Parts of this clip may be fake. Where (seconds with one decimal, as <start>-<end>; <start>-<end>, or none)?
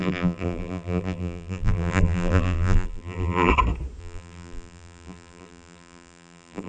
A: 0.0-3.5; 4.0-6.7